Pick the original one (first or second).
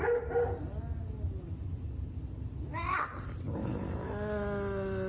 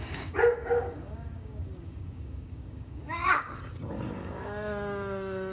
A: first